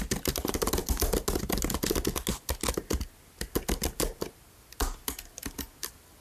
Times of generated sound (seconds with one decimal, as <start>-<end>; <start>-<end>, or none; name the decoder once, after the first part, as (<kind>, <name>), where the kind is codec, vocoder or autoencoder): none